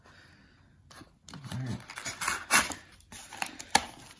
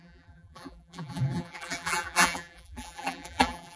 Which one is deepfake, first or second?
second